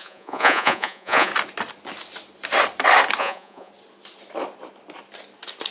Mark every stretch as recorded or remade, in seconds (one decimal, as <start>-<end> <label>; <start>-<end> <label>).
0.0-1.3 remade; 1.3-3.2 recorded; 3.2-3.7 remade; 3.7-5.7 recorded